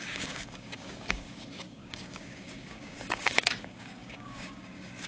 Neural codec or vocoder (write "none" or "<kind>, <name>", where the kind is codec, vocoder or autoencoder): codec, DAC